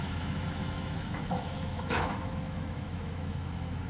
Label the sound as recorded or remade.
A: remade